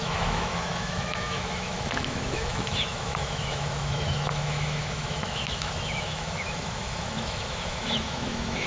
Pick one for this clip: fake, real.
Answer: fake